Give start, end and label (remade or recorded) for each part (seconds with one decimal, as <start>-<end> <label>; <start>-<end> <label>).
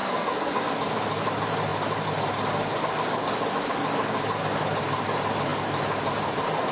0.0-0.7 remade; 0.7-6.7 recorded